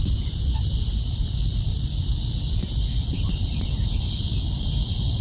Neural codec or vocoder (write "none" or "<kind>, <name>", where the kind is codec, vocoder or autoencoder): none